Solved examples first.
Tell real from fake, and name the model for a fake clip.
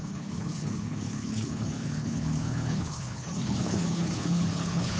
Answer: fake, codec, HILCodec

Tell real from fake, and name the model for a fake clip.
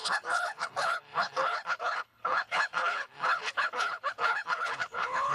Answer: fake, codec, HILCodec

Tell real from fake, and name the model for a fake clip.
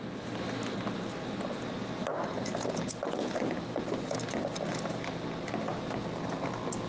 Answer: real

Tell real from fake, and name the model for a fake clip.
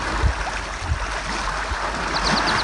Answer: real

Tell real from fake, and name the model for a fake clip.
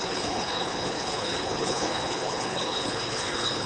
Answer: fake, codec, HILCodec